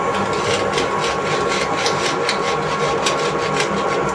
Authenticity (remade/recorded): recorded